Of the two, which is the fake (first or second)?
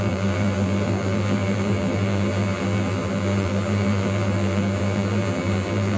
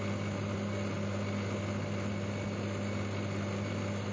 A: first